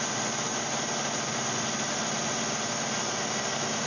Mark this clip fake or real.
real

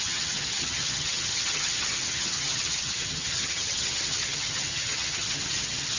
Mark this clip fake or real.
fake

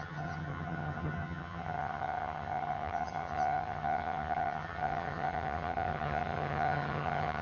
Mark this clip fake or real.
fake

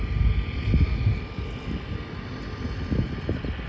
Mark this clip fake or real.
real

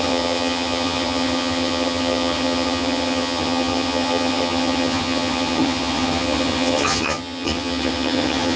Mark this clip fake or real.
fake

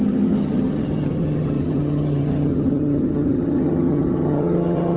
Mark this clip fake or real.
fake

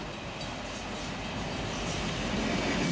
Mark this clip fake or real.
real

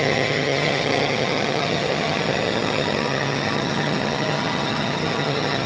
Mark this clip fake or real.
fake